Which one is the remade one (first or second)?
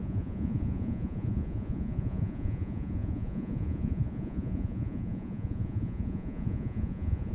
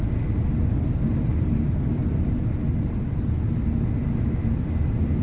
first